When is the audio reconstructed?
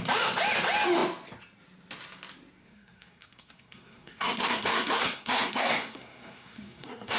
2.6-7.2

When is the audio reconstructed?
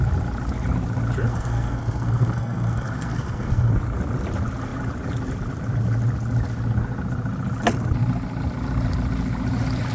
1.3-3.7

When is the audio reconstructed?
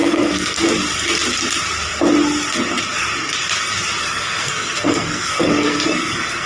0.0-0.6; 4.0-6.5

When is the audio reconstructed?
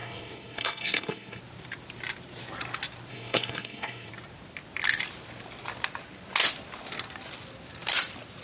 0.0-1.4; 3.1-4.1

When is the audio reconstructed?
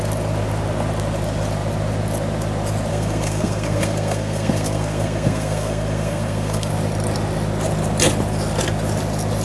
2.9-6.7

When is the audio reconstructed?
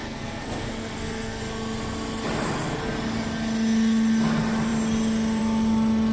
0.0-1.4